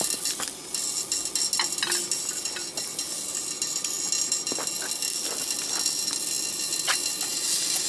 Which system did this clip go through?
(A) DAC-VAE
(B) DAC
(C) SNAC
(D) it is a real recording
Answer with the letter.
D